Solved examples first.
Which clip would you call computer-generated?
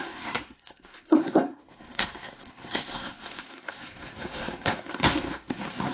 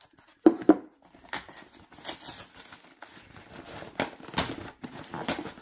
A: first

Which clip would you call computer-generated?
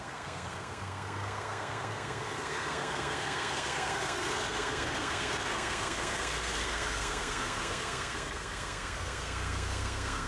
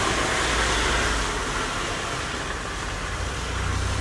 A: first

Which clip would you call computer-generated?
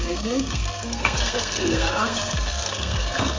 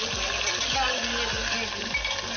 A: first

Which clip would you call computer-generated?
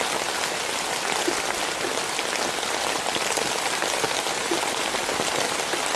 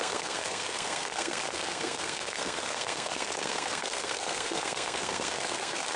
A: second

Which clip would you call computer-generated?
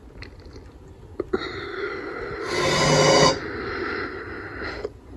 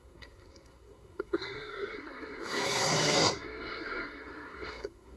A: second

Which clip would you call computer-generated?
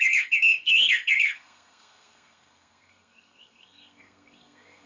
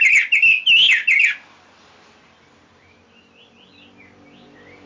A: first